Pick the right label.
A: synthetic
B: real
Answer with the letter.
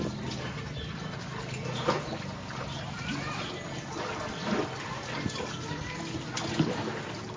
B